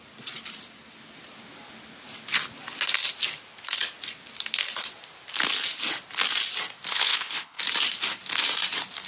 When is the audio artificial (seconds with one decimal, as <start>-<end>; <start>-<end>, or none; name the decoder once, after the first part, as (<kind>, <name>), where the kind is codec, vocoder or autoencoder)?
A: 6.9-7.6 (codec, HILCodec)